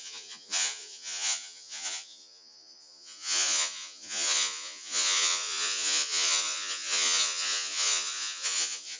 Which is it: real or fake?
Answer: fake